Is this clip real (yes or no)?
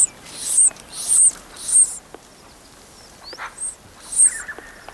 yes